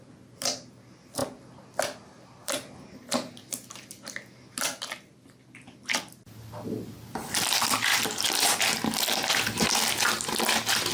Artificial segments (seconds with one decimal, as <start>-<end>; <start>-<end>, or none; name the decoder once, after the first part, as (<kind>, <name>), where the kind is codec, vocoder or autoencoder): none